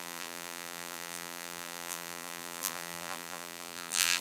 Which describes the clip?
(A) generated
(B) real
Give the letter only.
A